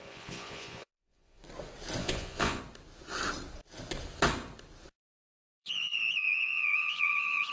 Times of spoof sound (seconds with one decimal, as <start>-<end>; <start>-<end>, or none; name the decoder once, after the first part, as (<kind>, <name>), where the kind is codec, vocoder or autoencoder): 0.0-1.4 (vocoder, Vocos); 2.0-2.6; 5.0-7.5